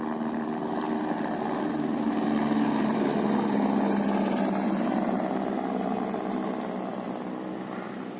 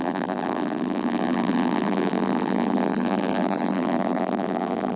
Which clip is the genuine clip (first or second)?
first